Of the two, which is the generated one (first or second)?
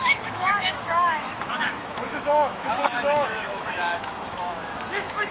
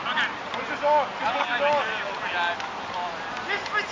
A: first